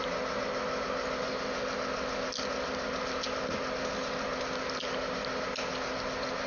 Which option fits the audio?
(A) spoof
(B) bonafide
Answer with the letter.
B